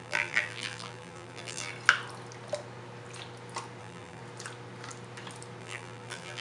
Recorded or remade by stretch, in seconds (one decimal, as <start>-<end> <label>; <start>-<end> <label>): 0.0-1.7 remade; 1.7-3.8 recorded; 3.8-4.2 remade; 4.2-5.6 recorded; 5.6-6.4 remade